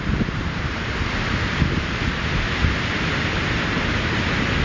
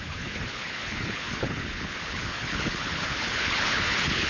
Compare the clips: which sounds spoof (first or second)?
second